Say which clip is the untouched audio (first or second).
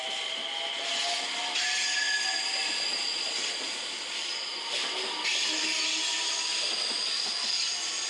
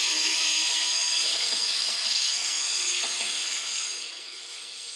first